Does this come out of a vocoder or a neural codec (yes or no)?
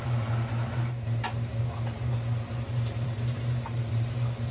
yes